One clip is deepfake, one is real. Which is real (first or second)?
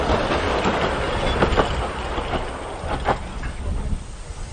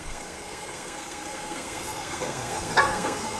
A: first